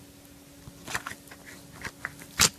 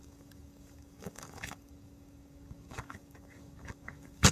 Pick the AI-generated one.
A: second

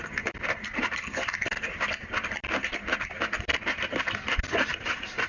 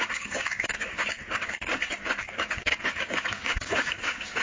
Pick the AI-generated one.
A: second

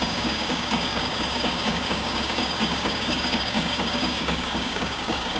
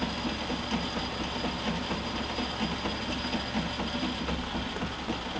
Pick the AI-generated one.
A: first